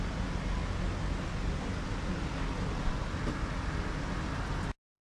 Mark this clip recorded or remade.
recorded